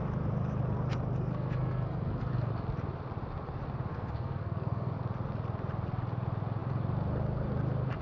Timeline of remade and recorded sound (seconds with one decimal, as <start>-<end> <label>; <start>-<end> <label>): 0.0-1.2 recorded; 1.2-2.5 remade; 2.5-3.9 recorded; 3.9-5.0 remade; 5.0-8.0 recorded